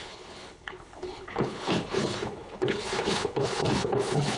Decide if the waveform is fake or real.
fake